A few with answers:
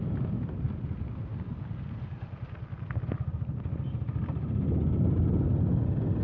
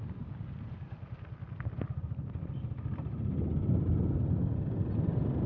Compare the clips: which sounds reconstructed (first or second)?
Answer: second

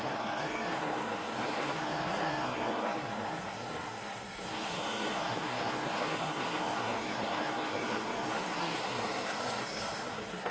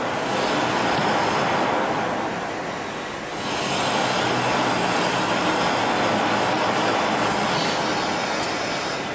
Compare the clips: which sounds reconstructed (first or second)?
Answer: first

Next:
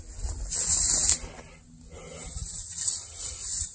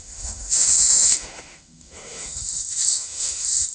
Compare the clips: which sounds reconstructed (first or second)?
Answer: second